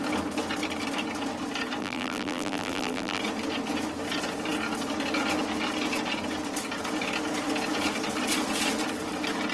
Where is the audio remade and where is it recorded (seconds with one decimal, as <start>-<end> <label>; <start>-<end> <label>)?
0.0-1.8 recorded; 1.8-3.2 remade; 3.2-9.5 recorded